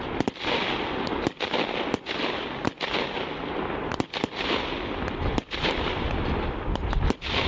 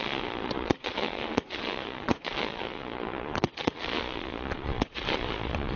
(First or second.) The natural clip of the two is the first